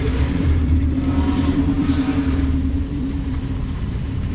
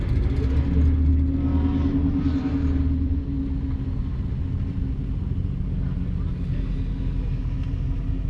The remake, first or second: first